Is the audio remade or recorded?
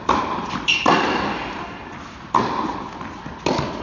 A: recorded